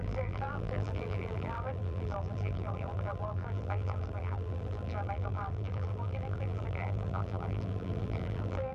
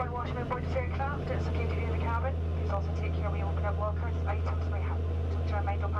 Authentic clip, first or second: second